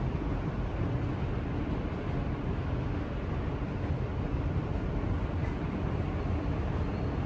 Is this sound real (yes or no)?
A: yes